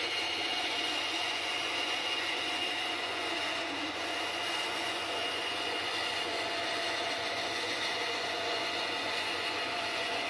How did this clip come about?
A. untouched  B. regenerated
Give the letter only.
B